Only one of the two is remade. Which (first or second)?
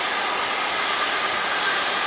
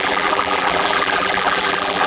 second